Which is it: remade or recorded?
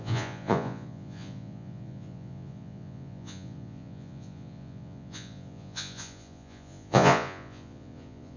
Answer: remade